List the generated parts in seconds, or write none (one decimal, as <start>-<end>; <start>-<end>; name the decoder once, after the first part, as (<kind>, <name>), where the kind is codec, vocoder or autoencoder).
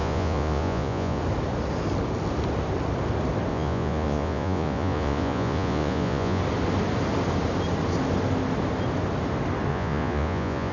0.0-1.2 (vocoder, Vocos); 3.5-6.4; 9.7-10.7